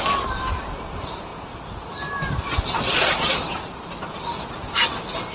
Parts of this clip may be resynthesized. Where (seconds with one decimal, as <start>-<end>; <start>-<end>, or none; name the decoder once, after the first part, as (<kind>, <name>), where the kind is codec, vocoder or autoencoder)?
none